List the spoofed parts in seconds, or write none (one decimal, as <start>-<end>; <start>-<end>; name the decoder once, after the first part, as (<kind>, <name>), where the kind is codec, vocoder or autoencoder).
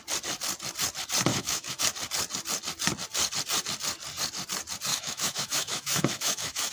1.3-1.8 (autoencoder, DAC-VAE); 4.9-6.7